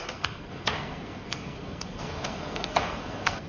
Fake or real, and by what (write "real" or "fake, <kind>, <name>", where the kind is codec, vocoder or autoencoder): fake, codec, SNAC